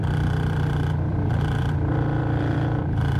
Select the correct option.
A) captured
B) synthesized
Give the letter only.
B